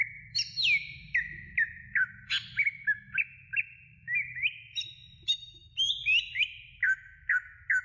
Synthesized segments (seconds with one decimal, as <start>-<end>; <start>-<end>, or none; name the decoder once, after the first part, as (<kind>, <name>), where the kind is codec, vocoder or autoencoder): none